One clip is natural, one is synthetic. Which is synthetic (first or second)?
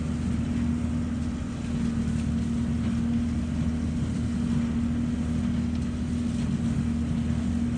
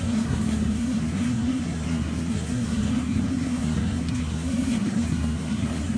second